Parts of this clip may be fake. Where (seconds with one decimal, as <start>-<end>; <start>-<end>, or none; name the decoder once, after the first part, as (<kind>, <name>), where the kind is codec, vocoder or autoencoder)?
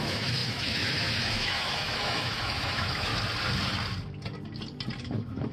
0.0-3.1 (autoencoder, DAC-VAE); 5.0-5.5